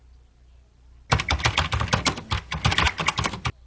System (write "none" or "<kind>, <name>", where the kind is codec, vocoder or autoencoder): none